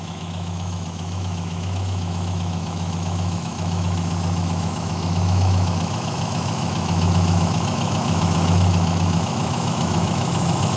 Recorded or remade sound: remade